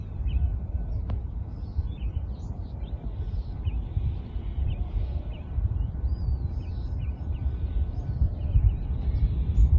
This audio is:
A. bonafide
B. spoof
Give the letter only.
B